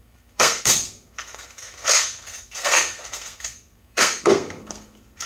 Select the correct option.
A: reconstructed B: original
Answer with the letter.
A